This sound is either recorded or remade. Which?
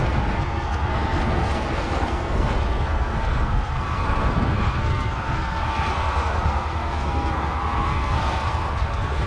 remade